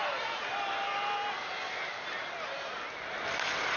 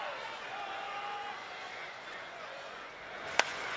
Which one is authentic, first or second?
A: first